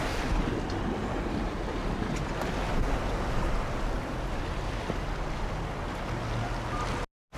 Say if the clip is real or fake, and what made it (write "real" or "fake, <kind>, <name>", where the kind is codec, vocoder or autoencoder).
real